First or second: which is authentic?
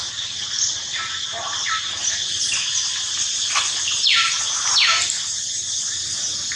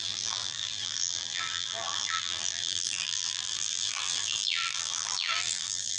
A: first